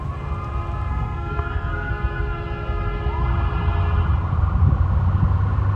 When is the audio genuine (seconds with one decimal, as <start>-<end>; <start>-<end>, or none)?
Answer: 0.0-0.9; 1.9-5.8

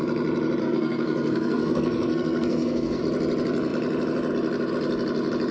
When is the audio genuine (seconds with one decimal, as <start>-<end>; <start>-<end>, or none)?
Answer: 0.0-0.6; 3.0-5.5

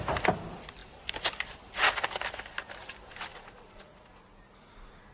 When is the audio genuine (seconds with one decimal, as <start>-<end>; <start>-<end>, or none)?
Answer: 0.0-3.3

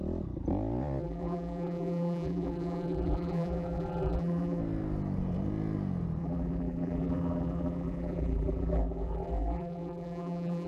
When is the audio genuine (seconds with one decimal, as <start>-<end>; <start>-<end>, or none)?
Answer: 0.0-1.0; 4.6-6.2

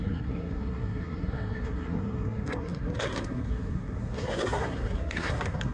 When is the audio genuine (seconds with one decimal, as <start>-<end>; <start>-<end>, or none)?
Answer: none

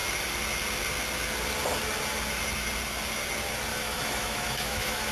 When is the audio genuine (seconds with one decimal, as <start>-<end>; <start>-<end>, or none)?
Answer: 0.0-3.7